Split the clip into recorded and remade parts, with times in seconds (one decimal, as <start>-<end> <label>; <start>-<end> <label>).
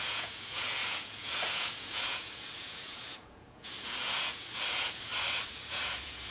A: 0.0-5.1 remade; 5.1-5.7 recorded; 5.7-6.3 remade